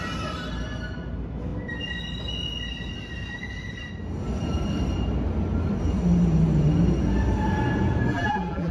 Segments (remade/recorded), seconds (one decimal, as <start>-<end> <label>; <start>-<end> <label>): 0.0-8.1 recorded; 8.1-8.7 remade